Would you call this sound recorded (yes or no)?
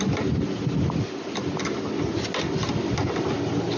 yes